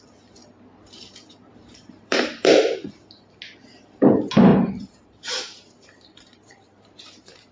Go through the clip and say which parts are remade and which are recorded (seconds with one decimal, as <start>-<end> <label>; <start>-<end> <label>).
0.0-0.4 recorded; 0.4-2.5 remade; 2.5-4.5 recorded; 4.5-7.5 remade